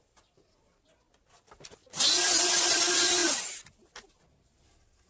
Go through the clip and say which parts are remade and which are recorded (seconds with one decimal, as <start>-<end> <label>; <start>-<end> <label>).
0.0-5.1 recorded